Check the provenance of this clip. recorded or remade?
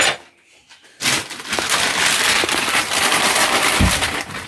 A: remade